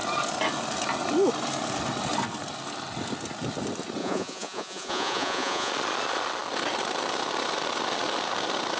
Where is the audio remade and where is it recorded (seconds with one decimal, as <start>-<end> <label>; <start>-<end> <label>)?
0.0-4.0 recorded; 4.0-5.7 remade; 5.7-8.8 recorded